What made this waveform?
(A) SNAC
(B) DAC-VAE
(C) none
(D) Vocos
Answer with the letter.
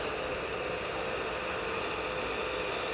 C